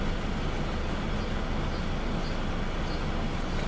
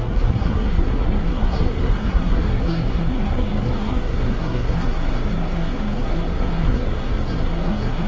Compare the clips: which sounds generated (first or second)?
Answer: second